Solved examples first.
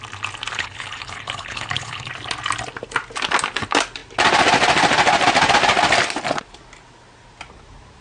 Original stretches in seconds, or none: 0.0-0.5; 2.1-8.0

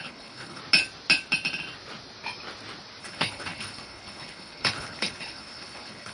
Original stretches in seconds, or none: 0.6-3.0

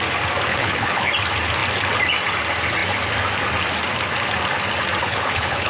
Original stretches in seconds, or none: 0.0-0.5; 1.1-5.0